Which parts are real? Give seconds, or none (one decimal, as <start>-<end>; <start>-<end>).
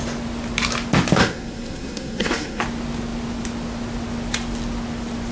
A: 0.0-1.2; 2.6-5.3